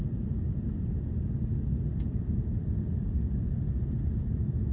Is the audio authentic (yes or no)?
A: yes